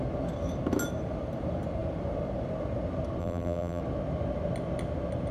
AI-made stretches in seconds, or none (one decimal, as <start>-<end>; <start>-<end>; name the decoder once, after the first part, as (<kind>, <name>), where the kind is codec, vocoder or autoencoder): 3.2-3.8 (vocoder, BigVGAN v2)